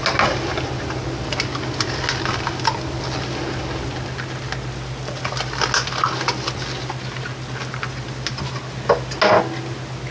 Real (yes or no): yes